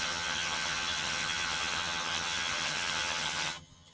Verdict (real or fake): fake